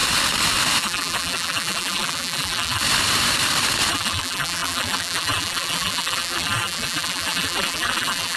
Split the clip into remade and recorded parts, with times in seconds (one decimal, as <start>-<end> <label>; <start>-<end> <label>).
0.0-0.8 recorded; 0.8-2.8 remade; 2.8-3.9 recorded; 3.9-8.4 remade